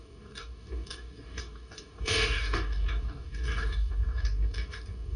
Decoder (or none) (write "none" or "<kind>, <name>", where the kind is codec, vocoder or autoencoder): codec, DAC